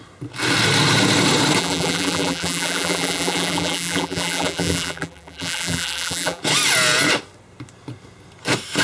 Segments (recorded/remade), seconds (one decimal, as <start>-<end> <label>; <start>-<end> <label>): 0.0-1.6 recorded; 1.6-6.4 remade; 6.4-8.8 recorded